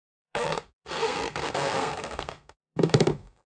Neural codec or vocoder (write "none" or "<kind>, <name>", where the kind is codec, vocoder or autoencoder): codec, SNAC